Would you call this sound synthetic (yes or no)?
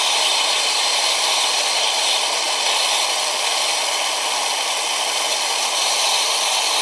no